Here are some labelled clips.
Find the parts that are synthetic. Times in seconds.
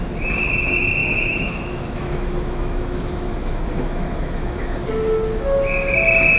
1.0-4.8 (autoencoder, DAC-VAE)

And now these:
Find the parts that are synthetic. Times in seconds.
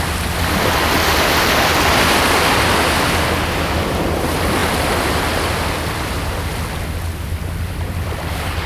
none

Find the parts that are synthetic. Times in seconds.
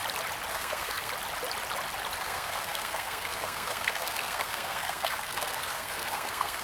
0.5-1.1 (codec, SNAC); 2.2-6.6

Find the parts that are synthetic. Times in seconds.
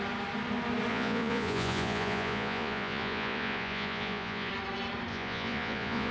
0.9-4.5 (vocoder, Vocos); 5.1-6.1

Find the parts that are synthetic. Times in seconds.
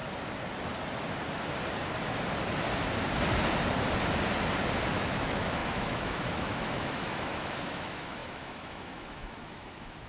4.9-10.1 (autoencoder, DAC-VAE)